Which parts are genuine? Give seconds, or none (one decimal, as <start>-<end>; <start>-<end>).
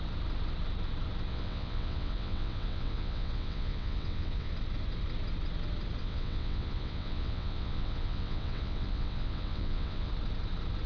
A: 0.0-1.3; 4.5-6.0; 10.1-10.9